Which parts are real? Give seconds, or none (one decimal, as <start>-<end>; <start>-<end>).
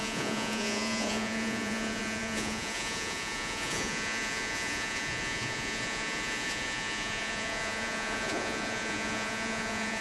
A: none